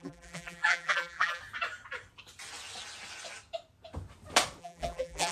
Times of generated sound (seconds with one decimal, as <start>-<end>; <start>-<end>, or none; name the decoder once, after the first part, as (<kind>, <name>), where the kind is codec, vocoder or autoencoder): 0.0-1.4 (vocoder, BigVGAN v2); 4.6-5.3